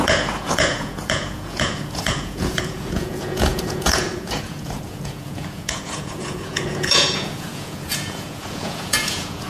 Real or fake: fake